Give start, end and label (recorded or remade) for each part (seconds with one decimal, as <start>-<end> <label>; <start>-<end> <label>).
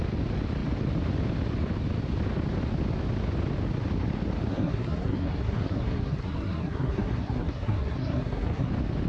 0.0-4.5 recorded; 4.5-8.7 remade; 8.7-9.1 recorded